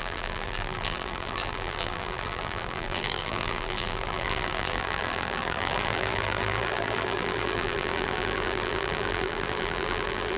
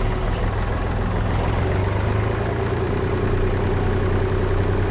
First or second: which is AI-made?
first